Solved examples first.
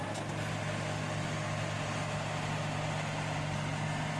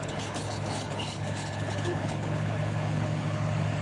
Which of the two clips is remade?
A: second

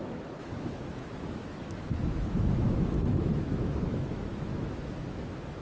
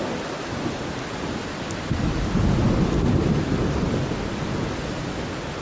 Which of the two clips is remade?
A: first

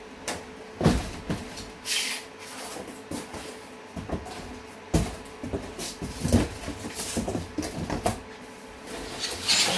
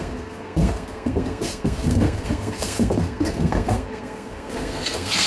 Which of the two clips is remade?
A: second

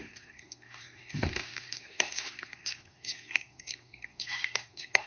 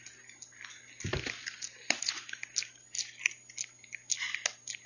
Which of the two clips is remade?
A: first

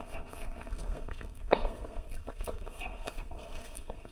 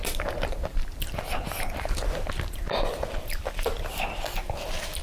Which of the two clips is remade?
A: first